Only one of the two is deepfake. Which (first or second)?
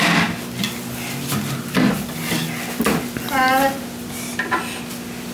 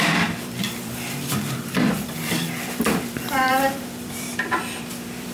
second